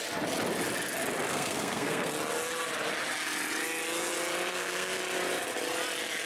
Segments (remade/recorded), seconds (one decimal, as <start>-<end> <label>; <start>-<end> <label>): 0.0-1.3 recorded; 1.3-2.1 remade; 2.1-4.5 recorded; 4.5-5.0 remade; 5.0-6.3 recorded